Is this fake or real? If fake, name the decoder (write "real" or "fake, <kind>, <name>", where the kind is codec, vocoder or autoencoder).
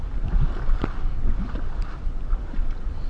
real